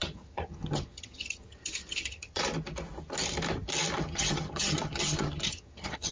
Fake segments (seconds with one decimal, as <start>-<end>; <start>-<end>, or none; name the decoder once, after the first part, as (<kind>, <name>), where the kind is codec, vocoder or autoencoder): 0.0-2.4 (vocoder, HiFi-GAN); 4.0-6.1